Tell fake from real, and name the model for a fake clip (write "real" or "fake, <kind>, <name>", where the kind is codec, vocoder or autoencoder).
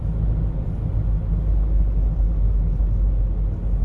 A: real